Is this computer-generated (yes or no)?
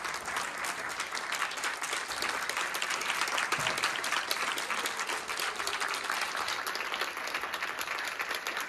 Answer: no